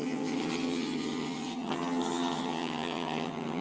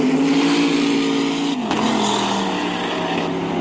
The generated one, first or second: first